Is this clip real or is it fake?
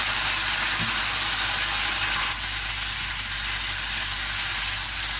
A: real